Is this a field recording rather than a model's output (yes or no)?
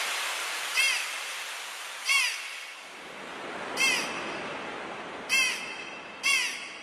no